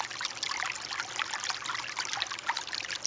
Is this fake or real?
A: real